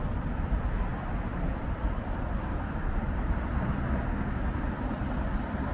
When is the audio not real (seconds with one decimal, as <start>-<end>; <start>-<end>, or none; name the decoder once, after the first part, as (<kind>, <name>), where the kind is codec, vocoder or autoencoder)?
0.0-5.7 (vocoder, BigVGAN v2)